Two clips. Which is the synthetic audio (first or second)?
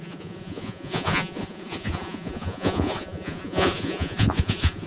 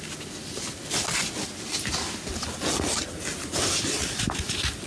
first